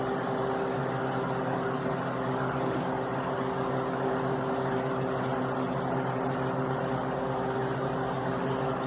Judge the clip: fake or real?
real